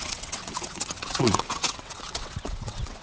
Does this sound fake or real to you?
fake